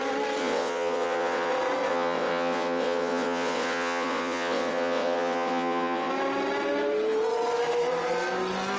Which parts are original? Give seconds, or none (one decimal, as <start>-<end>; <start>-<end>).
0.0-0.4; 1.5-1.9; 6.1-8.8